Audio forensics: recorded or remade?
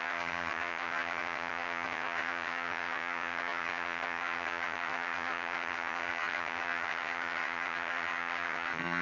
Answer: remade